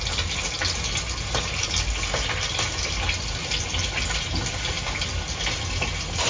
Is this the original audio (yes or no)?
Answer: yes